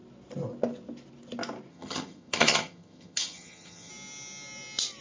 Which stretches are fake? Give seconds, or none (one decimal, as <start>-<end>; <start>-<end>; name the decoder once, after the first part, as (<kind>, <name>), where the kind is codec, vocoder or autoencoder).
1.7-3.9 (vocoder, HiFi-GAN)